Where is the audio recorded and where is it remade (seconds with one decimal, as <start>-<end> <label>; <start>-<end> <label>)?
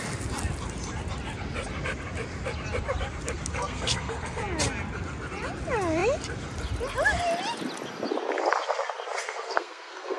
0.0-3.5 recorded; 3.5-4.4 remade; 4.4-9.2 recorded; 9.2-10.2 remade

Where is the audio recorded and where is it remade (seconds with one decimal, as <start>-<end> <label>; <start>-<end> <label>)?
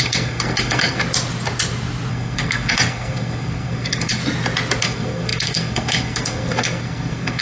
0.0-1.0 remade; 1.0-2.1 recorded; 2.1-4.2 remade; 4.2-4.8 recorded; 4.8-7.4 remade